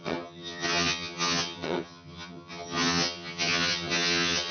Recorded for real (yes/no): no